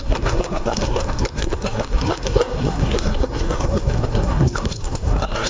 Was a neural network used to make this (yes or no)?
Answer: yes